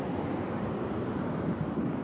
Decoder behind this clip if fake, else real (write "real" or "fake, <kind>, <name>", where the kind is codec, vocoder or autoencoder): real